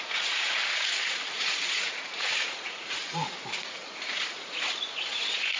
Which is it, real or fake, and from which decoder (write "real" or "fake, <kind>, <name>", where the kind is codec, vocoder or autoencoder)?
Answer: fake, vocoder, Vocos